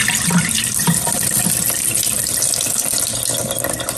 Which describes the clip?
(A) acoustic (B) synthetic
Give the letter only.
A